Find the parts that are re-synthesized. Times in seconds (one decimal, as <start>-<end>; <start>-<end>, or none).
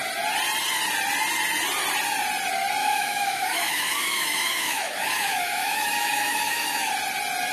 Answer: 2.8-6.9